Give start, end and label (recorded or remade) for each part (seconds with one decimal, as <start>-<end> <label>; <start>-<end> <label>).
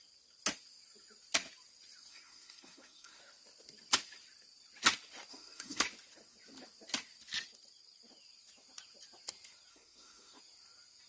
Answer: 0.0-2.1 recorded; 2.1-3.2 remade; 3.2-5.3 recorded; 5.3-5.8 remade; 5.8-9.7 recorded; 9.7-10.4 remade; 10.4-11.1 recorded